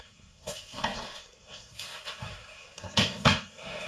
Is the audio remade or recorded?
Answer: remade